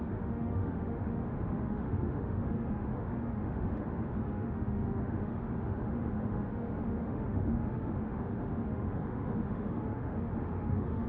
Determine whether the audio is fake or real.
fake